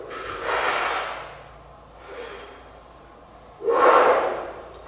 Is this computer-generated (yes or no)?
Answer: no